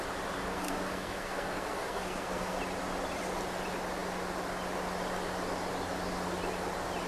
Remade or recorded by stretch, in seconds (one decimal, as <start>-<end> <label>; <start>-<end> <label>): 0.0-0.5 recorded; 0.5-2.6 remade; 2.6-7.1 recorded